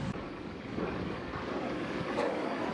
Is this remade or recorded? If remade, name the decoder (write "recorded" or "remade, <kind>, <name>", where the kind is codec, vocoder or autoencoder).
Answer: remade, codec, DAC